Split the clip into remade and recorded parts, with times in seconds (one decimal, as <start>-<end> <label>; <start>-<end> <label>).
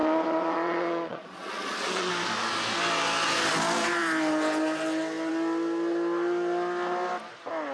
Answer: 0.0-2.1 remade; 2.1-7.7 recorded